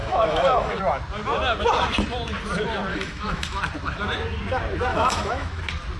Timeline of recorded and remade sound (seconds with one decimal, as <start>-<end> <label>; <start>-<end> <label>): 0.0-0.8 remade; 0.8-2.9 recorded; 2.9-3.6 remade; 3.6-4.9 recorded; 4.9-5.6 remade; 5.6-6.0 recorded